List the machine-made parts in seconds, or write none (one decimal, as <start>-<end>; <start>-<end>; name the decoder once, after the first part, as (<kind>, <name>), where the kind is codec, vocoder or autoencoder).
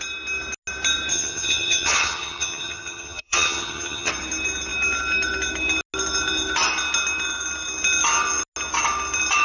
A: 1.1-4.1 (vocoder, HiFi-GAN)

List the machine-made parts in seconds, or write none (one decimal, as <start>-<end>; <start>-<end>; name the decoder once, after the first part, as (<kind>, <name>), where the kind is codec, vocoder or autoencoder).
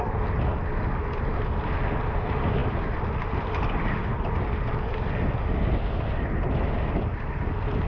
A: none